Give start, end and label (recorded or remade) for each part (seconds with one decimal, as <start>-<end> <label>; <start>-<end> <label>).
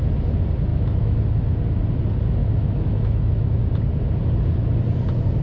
0.0-0.7 recorded; 0.7-1.2 remade; 1.2-2.4 recorded; 2.4-3.6 remade; 3.6-5.4 recorded